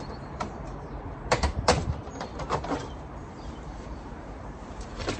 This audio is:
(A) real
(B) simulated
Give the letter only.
B